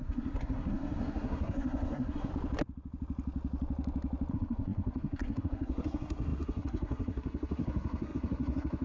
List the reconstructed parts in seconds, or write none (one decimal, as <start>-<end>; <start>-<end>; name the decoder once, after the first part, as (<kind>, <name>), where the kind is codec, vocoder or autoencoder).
0.0-2.3 (codec, SNAC); 4.3-8.8